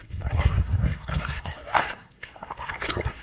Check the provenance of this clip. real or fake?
fake